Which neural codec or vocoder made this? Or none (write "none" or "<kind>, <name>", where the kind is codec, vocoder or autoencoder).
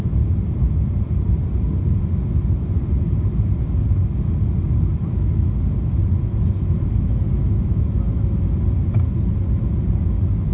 none